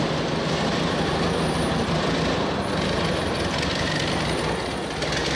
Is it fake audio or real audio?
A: real